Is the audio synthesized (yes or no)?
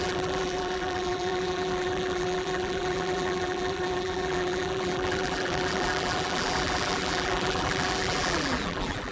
yes